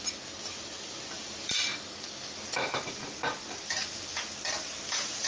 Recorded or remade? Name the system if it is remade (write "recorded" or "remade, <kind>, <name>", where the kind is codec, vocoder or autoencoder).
recorded